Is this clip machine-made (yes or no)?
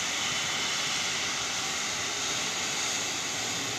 yes